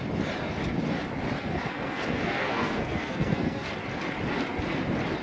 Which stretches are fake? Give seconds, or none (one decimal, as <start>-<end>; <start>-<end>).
1.4-3.7